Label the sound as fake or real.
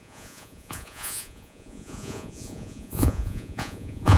fake